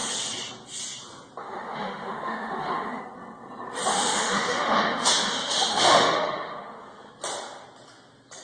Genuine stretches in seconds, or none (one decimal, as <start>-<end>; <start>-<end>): 0.0-1.4; 3.0-3.9; 7.1-8.4

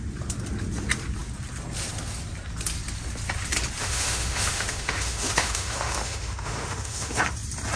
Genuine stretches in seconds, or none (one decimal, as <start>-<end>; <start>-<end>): 0.0-3.8; 7.2-7.8

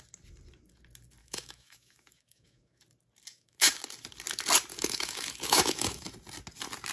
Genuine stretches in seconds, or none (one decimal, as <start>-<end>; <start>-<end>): 0.0-1.2; 2.8-3.3; 3.8-4.7; 6.1-6.9

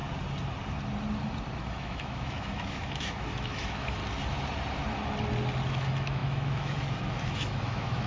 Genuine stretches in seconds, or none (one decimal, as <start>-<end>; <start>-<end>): 0.0-1.6; 4.0-5.7

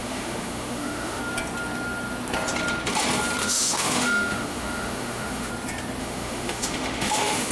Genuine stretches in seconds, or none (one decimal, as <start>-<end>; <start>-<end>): 1.2-3.4; 5.5-6.0